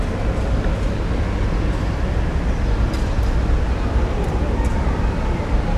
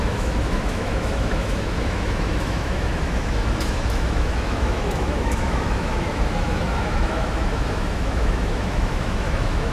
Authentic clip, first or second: first